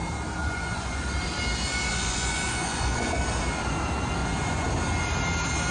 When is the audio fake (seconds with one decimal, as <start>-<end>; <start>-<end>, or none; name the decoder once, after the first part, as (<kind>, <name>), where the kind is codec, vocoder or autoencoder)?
0.4-1.0 (vocoder, Vocos); 1.9-3.2; 4.2-4.7